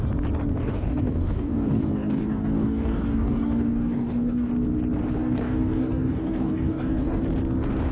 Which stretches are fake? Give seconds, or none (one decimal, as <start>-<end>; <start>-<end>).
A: 0.5-4.5; 5.2-7.2